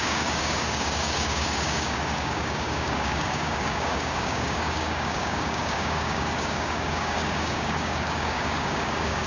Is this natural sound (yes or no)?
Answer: no